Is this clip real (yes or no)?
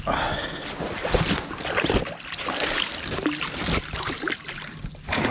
yes